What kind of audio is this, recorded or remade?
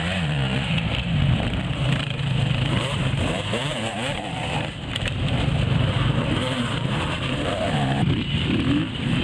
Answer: remade